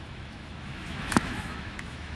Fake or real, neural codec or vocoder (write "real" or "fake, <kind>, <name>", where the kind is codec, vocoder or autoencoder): fake, autoencoder, DAC-VAE